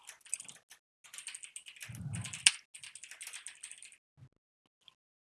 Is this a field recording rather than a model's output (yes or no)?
yes